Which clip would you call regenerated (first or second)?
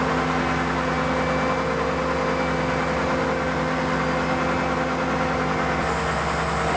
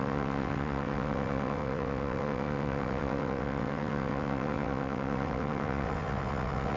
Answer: second